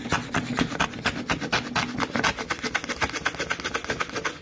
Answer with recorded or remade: recorded